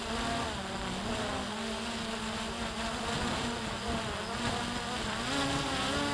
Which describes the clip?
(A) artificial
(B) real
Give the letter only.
B